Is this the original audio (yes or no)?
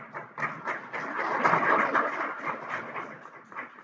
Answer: yes